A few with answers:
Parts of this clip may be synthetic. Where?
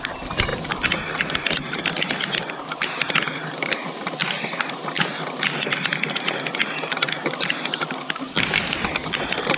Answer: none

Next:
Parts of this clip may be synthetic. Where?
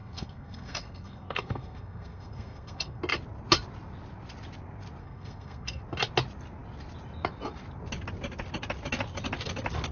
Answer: 0.0-3.0 (codec, SNAC); 5.0-5.8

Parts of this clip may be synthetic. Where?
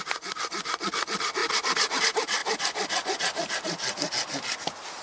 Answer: none